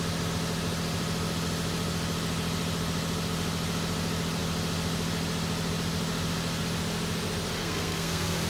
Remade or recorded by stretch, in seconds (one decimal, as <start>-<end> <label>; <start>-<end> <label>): 0.0-7.6 recorded; 7.6-8.5 remade

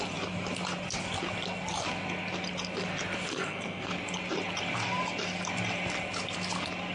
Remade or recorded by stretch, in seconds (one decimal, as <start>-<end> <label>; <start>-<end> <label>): 0.0-3.3 recorded; 3.3-3.9 remade; 3.9-6.9 recorded

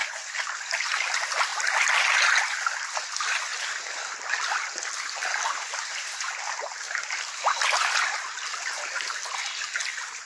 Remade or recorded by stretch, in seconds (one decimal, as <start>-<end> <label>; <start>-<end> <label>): 0.0-10.3 recorded

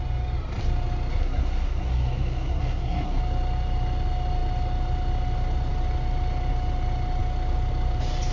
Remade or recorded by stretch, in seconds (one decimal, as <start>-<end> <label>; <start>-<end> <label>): 0.0-1.1 recorded; 1.1-3.2 remade; 3.2-8.3 recorded

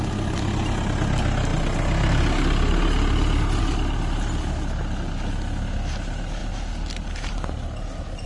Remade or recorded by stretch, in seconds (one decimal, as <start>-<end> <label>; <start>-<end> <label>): 0.0-8.3 recorded

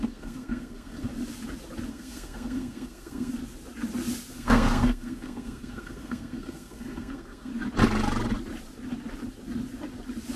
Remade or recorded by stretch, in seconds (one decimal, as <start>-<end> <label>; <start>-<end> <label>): 0.0-1.1 remade; 1.1-1.9 recorded; 1.9-3.3 remade; 3.3-4.3 recorded; 4.3-7.5 remade; 7.5-10.4 recorded

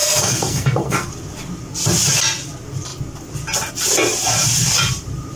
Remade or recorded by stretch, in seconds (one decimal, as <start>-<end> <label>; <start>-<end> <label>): 0.0-1.1 remade; 1.1-5.4 recorded

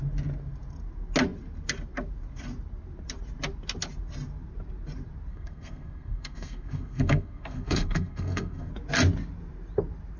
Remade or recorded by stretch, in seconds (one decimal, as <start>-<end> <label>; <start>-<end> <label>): 0.0-5.3 recorded; 5.3-8.7 remade; 8.7-10.2 recorded